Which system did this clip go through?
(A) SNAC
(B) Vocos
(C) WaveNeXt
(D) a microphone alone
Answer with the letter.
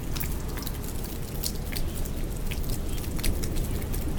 D